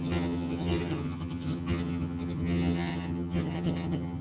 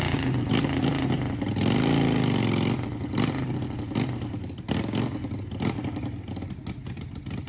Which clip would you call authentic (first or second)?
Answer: second